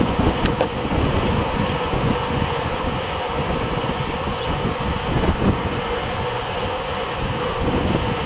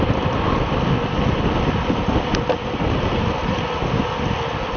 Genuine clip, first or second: second